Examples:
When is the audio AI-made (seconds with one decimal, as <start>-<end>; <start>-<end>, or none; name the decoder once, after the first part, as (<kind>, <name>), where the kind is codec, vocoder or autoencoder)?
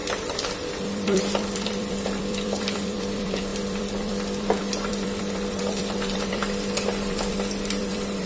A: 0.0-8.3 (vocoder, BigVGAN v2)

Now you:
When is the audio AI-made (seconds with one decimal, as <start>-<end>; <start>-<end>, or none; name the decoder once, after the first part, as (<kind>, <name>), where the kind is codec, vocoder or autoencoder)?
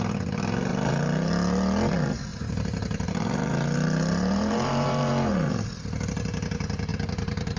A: 0.7-1.3 (vocoder, BigVGAN v2); 2.3-5.1; 6.9-7.6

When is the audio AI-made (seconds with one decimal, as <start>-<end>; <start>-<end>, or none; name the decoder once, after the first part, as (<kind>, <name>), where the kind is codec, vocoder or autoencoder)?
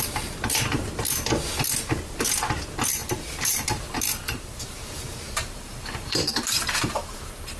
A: 3.0-7.6 (vocoder, BigVGAN v2)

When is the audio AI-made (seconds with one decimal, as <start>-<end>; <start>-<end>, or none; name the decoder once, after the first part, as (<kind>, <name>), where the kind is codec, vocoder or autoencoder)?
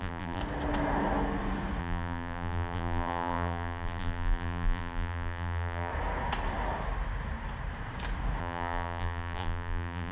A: 0.0-0.4 (vocoder, BigVGAN v2); 1.8-5.9; 8.4-10.1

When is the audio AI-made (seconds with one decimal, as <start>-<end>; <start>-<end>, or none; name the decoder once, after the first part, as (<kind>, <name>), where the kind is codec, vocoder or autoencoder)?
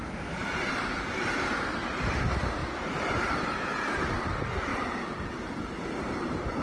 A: 0.0-2.6 (vocoder, BigVGAN v2); 3.4-4.7; 5.6-6.6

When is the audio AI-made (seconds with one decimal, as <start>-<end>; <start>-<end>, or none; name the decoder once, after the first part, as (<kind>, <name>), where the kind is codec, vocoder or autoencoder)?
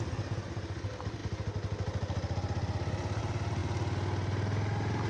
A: none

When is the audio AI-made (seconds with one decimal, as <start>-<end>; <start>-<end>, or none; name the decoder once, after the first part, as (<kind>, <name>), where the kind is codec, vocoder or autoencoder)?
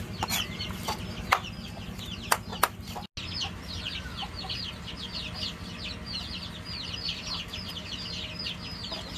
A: none